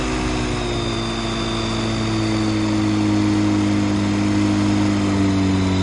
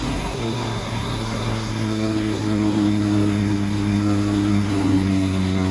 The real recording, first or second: first